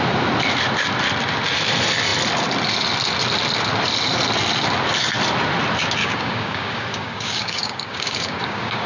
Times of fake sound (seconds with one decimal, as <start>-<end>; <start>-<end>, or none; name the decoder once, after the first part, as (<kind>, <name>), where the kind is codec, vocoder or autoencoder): 6.0-8.9 (codec, DAC)